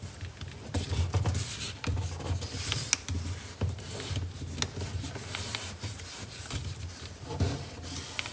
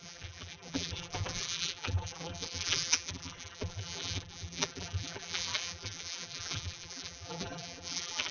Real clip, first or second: first